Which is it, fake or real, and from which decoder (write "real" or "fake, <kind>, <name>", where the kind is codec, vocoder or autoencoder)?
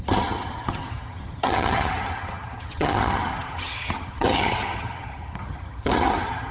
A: fake, vocoder, HiFi-GAN